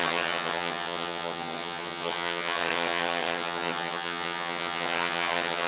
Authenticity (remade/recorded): remade